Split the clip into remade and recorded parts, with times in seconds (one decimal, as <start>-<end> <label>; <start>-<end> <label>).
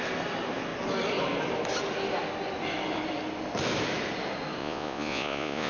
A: 0.0-4.6 recorded; 4.6-5.7 remade